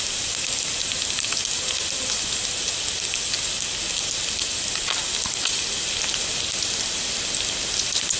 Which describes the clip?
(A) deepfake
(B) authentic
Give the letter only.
B